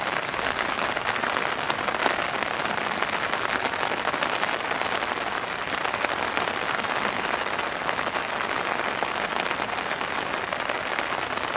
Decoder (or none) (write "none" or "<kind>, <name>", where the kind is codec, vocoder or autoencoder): none